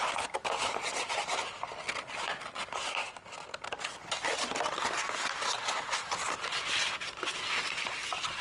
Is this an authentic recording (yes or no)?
yes